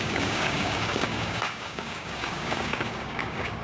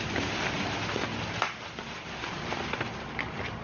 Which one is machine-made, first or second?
first